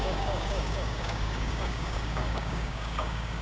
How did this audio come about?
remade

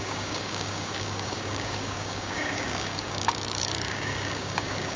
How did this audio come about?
remade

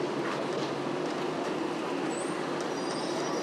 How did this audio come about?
recorded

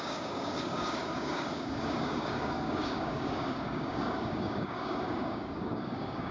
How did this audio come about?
remade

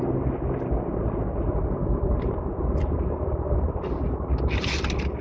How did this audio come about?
recorded